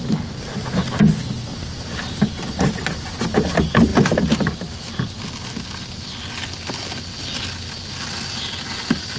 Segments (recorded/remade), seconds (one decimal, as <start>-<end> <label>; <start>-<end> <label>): 0.0-9.2 recorded